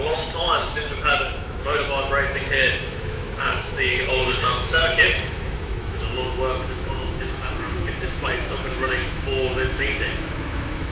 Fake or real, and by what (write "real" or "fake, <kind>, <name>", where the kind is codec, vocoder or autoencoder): fake, autoencoder, DAC-VAE